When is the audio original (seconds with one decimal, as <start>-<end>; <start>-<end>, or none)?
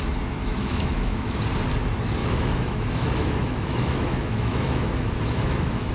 0.0-0.4; 1.4-2.2